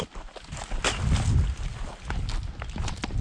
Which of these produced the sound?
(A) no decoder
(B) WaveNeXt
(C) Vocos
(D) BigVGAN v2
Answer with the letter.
A